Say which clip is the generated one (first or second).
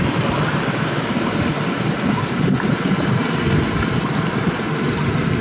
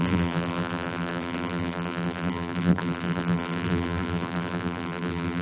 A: second